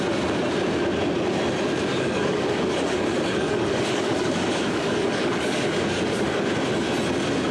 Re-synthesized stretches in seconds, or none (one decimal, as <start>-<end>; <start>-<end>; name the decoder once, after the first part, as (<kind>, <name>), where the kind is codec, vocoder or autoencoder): 1.9-6.4 (codec, DAC)